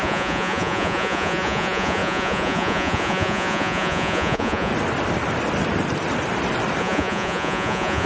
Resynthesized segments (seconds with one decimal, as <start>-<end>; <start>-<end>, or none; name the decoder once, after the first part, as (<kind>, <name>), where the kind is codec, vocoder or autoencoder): 0.0-4.7 (vocoder, Vocos); 6.8-8.1